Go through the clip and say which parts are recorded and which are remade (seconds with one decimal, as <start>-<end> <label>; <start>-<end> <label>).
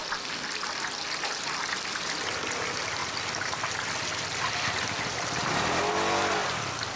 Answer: 0.0-7.0 recorded